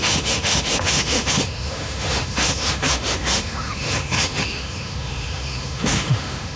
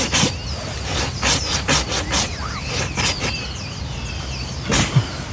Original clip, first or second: second